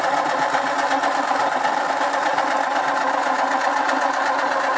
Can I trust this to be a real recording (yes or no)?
yes